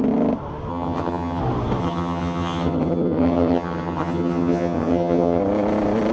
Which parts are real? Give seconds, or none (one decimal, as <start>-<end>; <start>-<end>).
0.0-0.7; 1.4-1.8; 5.4-6.1